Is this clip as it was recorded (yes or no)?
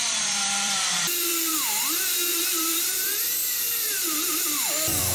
no